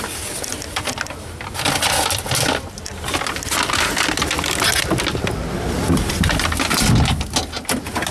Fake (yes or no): no